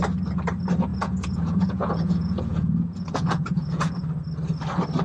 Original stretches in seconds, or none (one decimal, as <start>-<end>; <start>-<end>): 0.0-0.9; 3.9-5.0